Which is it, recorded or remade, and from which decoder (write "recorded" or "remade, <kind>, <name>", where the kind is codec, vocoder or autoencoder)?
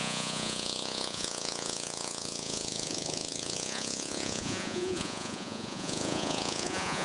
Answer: remade, vocoder, Vocos